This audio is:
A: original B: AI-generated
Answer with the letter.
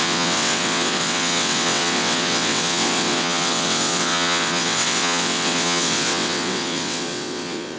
B